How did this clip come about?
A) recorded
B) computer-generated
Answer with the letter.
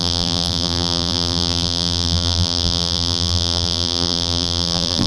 B